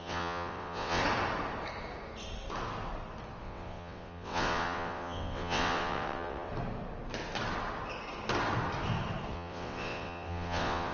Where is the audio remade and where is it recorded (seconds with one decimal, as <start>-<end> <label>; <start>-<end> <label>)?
0.0-1.0 remade; 1.0-3.4 recorded; 3.4-6.5 remade; 6.5-9.3 recorded; 9.3-10.9 remade